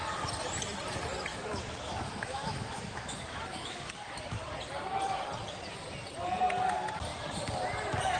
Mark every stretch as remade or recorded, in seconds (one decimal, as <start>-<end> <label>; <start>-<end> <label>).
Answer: 0.0-1.3 recorded; 1.3-4.4 remade; 4.4-8.2 recorded